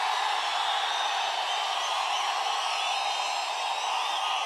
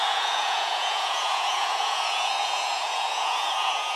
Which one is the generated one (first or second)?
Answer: second